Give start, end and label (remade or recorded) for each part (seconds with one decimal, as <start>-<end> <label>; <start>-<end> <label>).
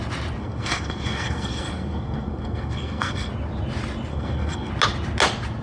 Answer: 0.0-0.4 recorded; 0.4-3.3 remade; 3.3-4.1 recorded; 4.1-4.7 remade; 4.7-5.6 recorded